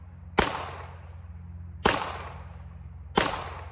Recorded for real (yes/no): yes